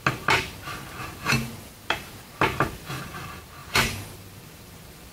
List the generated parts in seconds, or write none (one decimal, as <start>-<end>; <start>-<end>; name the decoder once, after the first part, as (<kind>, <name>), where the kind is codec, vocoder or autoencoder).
1.0-3.0 (vocoder, BigVGAN v2); 3.6-5.1